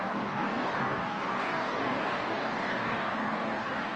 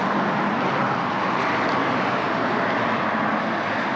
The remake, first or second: first